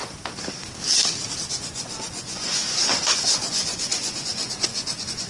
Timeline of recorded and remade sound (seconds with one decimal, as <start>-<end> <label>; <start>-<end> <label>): 0.0-1.5 recorded; 1.5-5.3 remade